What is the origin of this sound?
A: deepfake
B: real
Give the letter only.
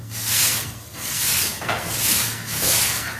A